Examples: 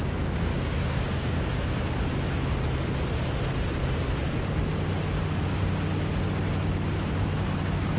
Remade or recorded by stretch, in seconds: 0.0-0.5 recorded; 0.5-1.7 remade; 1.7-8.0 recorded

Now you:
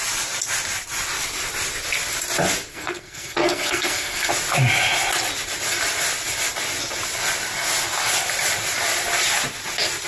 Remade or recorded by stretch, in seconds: 0.0-2.7 recorded; 2.7-4.3 remade; 4.3-10.1 recorded

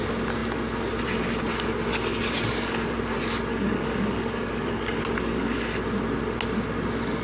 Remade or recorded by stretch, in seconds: 0.0-1.9 recorded; 1.9-3.0 remade; 3.0-3.5 recorded; 3.5-5.8 remade; 5.8-7.2 recorded

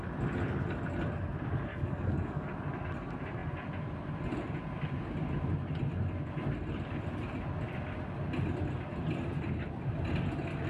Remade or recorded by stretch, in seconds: 0.0-1.7 recorded; 1.7-2.5 remade; 2.5-10.7 recorded

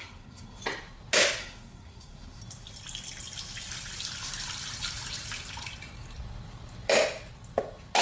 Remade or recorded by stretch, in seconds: 0.0-0.6 remade; 0.6-1.4 recorded; 1.4-2.4 remade; 2.4-8.0 recorded

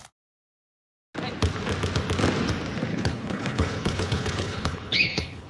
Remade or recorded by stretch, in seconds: 0.0-2.9 recorded; 2.9-5.5 remade

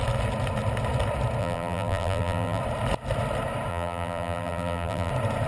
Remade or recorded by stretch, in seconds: 0.0-1.4 recorded; 1.4-2.6 remade; 2.6-3.7 recorded; 3.7-5.1 remade; 5.1-5.5 recorded